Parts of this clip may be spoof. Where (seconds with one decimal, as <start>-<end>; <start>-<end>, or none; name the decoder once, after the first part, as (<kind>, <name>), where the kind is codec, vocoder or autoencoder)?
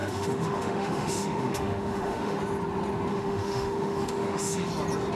0.0-2.4 (autoencoder, DAC-VAE); 3.1-4.7